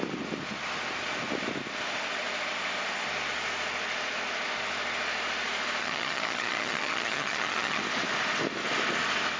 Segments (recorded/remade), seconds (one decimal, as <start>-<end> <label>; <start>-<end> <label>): 0.0-5.8 recorded; 5.8-7.8 remade; 7.8-9.4 recorded